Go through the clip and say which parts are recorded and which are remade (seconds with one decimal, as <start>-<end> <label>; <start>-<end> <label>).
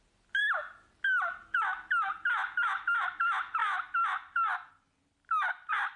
0.0-6.0 recorded